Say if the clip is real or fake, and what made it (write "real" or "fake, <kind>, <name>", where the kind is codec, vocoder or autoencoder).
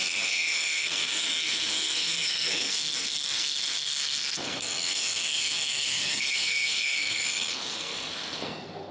fake, codec, SNAC